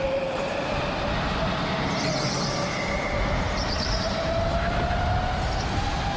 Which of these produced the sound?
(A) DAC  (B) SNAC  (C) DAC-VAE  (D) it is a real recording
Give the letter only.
D